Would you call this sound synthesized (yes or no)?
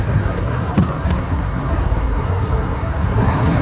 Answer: yes